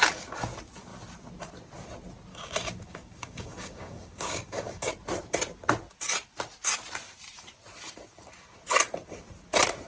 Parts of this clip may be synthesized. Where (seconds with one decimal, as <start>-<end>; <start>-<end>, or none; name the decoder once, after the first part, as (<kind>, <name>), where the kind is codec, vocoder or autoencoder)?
2.3-4.9 (codec, DAC)